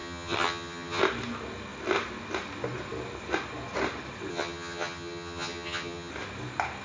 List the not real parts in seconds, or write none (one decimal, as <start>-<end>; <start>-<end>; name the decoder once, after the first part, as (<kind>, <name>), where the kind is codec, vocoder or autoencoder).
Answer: 0.0-1.0 (vocoder, HiFi-GAN); 4.3-6.1